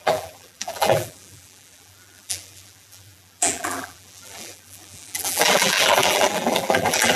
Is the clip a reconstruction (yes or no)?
yes